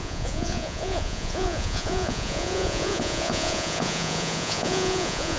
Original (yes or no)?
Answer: no